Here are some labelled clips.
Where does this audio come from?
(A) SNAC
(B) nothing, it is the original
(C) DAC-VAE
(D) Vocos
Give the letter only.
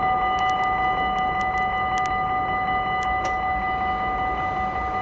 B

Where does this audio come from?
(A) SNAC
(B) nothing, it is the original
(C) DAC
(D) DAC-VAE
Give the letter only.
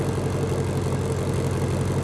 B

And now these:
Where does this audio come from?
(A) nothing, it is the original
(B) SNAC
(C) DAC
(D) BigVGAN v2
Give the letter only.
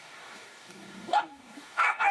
C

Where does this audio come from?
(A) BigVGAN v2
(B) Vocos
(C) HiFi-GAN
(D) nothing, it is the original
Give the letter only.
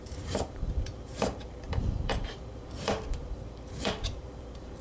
A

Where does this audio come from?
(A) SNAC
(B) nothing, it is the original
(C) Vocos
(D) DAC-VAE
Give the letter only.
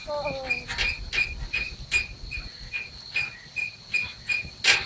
B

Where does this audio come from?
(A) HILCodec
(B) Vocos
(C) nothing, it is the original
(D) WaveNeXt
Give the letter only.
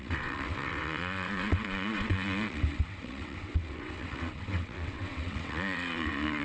D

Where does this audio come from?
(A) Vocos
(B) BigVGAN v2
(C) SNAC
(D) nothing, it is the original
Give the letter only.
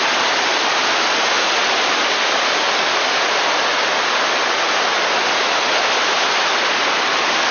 D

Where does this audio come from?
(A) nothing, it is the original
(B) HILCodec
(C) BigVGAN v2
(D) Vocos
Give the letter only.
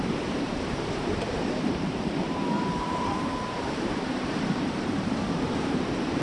C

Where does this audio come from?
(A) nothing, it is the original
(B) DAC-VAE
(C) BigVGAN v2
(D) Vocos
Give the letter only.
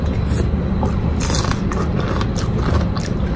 A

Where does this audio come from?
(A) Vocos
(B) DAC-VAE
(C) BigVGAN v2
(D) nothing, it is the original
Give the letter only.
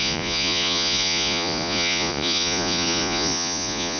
A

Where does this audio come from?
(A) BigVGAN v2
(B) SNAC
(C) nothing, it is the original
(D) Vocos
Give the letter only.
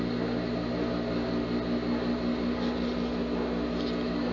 C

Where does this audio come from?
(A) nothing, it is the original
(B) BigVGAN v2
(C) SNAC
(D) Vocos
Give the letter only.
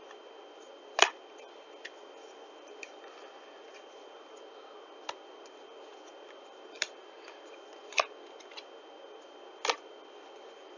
A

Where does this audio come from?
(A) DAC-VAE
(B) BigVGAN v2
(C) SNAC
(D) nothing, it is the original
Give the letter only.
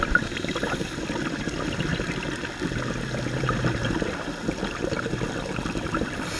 D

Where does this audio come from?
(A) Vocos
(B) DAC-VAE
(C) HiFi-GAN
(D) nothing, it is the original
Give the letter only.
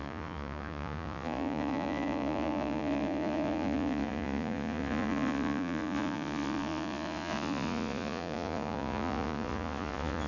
A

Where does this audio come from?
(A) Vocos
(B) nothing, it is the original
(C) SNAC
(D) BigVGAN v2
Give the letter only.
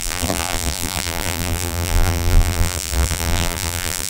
D